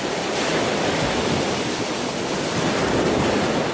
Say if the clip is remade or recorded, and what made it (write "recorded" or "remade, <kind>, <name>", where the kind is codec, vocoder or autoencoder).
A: recorded